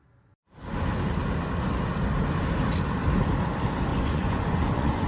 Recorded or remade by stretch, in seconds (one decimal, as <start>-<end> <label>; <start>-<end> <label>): 0.0-3.9 recorded; 3.9-5.1 remade